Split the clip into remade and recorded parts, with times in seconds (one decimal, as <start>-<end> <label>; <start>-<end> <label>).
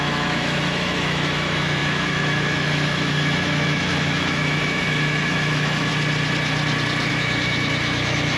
0.0-5.9 remade; 5.9-7.1 recorded; 7.1-8.4 remade